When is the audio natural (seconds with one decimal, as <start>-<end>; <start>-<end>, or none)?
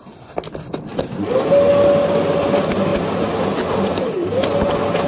0.0-5.1